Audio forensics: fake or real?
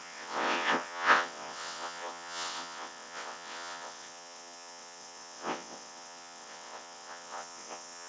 fake